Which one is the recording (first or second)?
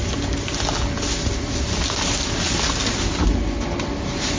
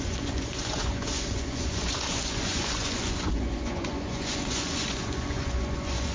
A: first